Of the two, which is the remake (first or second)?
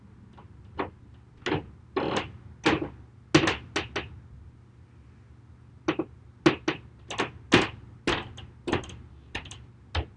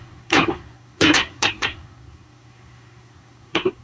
second